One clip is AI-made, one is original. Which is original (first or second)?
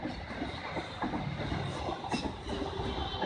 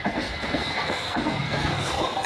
first